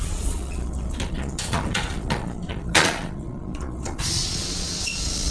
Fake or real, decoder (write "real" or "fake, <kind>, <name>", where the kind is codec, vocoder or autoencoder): fake, vocoder, Vocos